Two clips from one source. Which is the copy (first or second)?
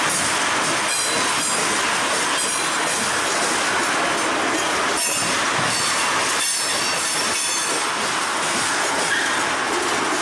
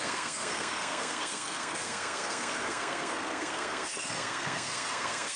second